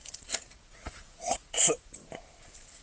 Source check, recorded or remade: remade